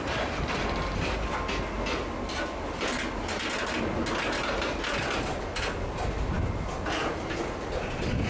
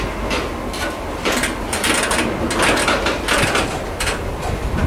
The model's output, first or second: second